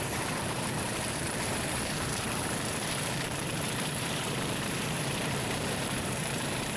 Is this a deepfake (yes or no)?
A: yes